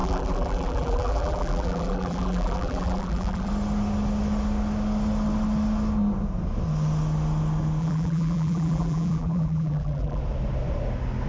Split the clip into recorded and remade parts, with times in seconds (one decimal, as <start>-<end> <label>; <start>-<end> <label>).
0.0-3.5 remade; 3.5-7.8 recorded; 7.8-10.2 remade; 10.2-11.3 recorded